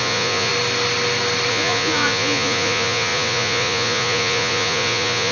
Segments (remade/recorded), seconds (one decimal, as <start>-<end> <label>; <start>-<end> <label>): 0.0-0.5 remade; 0.5-1.5 recorded; 1.5-5.3 remade